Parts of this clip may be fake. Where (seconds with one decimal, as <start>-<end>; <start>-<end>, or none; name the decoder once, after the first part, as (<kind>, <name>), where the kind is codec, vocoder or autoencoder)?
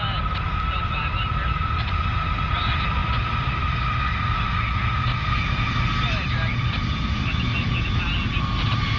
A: 3.0-3.7 (vocoder, BigVGAN v2)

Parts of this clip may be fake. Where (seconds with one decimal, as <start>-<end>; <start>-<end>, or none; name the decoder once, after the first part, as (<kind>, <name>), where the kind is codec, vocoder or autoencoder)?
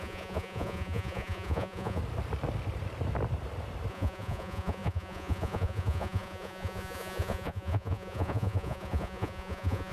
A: 0.0-2.0 (vocoder, Vocos); 3.9-9.9